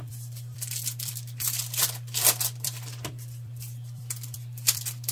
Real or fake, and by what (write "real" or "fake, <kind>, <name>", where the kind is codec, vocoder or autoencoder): fake, vocoder, BigVGAN v2